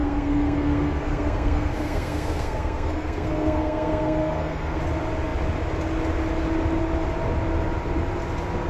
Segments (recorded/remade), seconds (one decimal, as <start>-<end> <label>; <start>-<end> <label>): 0.0-4.8 remade; 4.8-8.7 recorded